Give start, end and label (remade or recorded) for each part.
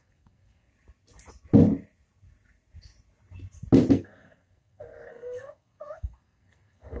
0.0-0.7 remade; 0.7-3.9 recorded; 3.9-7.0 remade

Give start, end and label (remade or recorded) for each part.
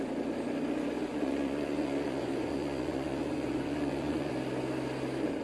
0.0-1.1 recorded; 1.1-4.3 remade; 4.3-5.4 recorded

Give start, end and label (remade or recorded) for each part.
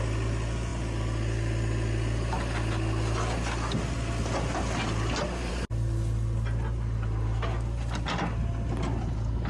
0.0-9.5 recorded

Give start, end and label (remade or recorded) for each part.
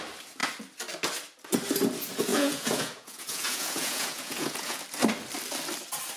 0.0-2.3 recorded; 2.3-4.8 remade; 4.8-6.2 recorded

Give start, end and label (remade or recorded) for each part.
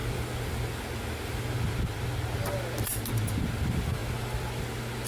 0.0-5.1 recorded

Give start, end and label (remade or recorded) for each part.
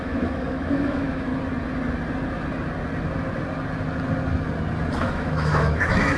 0.0-1.3 remade; 1.3-5.0 recorded; 5.0-6.2 remade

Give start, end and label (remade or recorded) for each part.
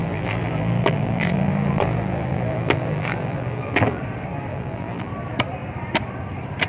0.0-4.0 remade; 4.0-4.5 recorded; 4.5-5.1 remade; 5.1-6.7 recorded